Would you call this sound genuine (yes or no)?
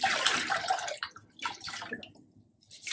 yes